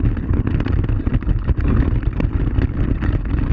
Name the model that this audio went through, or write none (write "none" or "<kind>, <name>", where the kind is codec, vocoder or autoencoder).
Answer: none